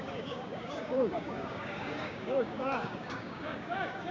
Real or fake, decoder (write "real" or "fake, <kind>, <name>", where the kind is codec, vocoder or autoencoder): fake, codec, DAC